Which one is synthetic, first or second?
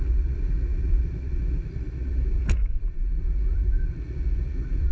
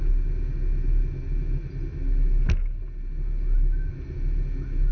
first